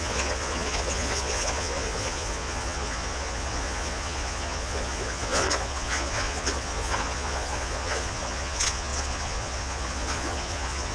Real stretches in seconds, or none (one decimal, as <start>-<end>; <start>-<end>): none